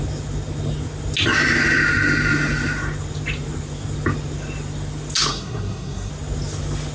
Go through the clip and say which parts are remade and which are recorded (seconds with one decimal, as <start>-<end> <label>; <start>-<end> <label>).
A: 0.0-5.3 recorded; 5.3-6.1 remade; 6.1-6.9 recorded